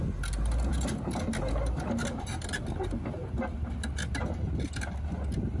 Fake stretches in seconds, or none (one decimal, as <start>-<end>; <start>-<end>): none